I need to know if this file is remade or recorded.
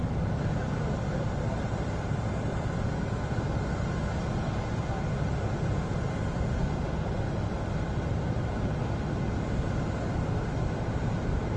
recorded